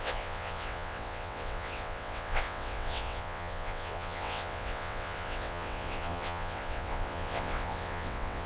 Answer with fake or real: fake